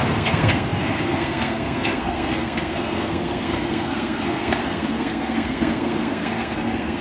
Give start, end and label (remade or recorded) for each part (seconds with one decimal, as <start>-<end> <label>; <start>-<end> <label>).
0.0-7.0 remade